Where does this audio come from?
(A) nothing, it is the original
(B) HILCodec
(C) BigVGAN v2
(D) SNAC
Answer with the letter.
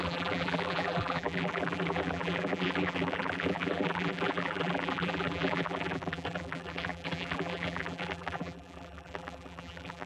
C